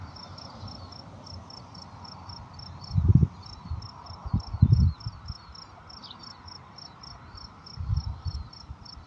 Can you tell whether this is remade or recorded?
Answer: recorded